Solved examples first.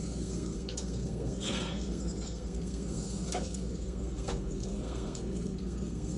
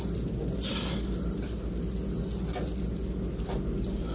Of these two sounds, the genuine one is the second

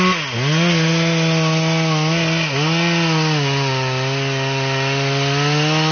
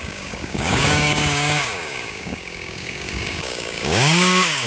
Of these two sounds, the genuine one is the first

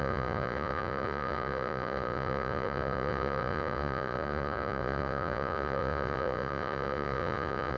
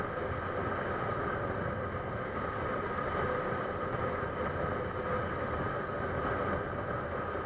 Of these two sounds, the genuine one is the second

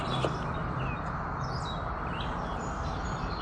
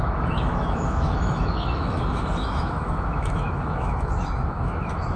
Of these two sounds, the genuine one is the first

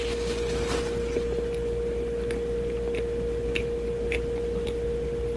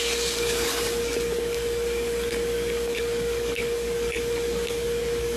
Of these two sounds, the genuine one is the first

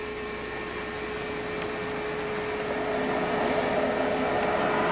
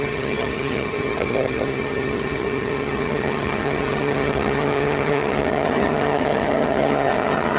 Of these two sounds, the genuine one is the first